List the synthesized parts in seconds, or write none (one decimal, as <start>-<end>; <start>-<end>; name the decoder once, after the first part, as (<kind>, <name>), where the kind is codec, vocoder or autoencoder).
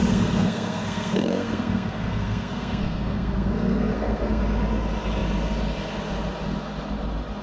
0.0-4.4 (codec, SNAC)